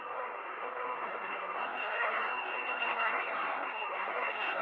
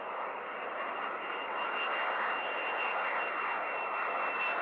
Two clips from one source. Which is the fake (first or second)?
first